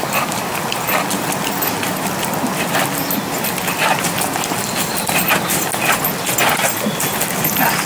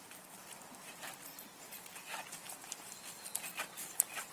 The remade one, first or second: second